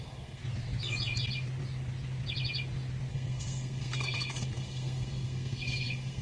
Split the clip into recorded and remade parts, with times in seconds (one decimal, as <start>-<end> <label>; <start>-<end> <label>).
0.0-0.4 remade; 0.4-3.1 recorded; 3.1-6.2 remade